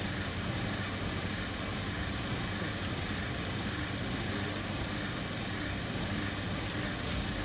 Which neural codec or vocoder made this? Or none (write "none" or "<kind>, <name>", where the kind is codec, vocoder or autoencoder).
none